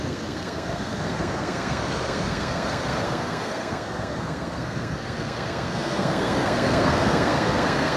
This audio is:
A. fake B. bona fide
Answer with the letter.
A